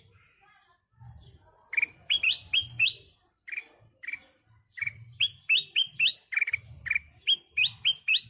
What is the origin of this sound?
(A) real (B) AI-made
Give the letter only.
B